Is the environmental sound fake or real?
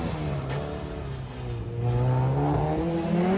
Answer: real